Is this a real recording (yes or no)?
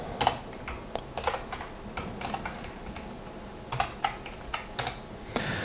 yes